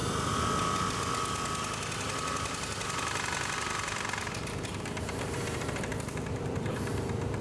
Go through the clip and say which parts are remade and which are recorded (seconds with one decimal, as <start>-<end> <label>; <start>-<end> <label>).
0.0-4.4 recorded; 4.4-7.4 remade